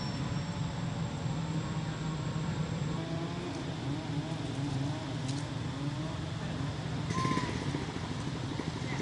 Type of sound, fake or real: real